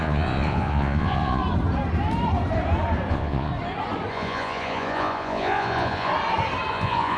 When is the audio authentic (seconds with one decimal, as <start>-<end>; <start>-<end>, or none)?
1.4-3.1; 3.5-4.1; 6.1-6.7